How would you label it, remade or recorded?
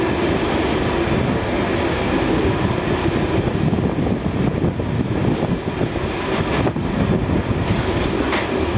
recorded